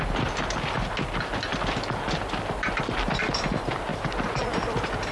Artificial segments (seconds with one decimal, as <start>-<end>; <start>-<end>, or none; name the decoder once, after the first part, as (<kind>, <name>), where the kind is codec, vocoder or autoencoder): 3.9-5.1 (vocoder, BigVGAN v2)